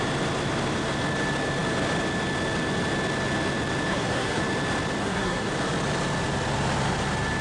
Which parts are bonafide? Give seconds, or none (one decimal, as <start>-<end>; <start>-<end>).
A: 0.0-3.9; 4.4-5.0; 5.5-7.4